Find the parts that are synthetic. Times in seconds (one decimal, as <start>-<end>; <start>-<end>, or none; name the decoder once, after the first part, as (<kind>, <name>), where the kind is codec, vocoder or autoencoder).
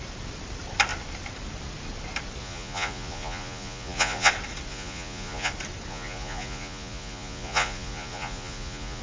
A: 2.4-4.3 (vocoder, Vocos); 4.7-5.5; 5.9-9.0